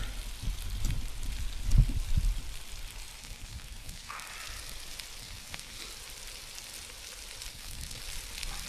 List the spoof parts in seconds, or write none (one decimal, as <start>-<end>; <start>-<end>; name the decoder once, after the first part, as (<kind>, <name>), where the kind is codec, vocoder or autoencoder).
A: 3.2-4.3 (codec, SNAC); 5.2-5.8; 7.5-8.0